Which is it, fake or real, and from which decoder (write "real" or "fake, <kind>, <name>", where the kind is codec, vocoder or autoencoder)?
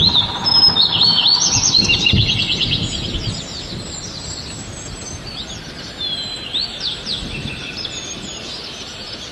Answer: real